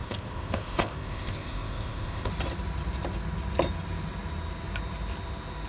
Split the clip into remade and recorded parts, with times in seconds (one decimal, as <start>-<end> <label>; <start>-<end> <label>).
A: 0.0-2.3 remade; 2.3-5.7 recorded